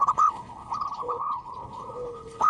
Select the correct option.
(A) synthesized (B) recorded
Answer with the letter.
A